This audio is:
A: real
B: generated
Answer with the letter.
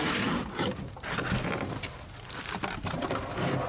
A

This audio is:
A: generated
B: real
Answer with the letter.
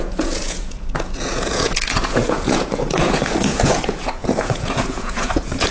A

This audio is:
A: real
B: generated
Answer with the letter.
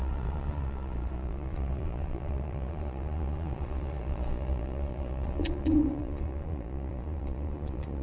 B